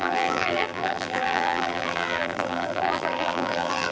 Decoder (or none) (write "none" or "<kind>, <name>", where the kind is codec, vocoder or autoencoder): vocoder, BigVGAN v2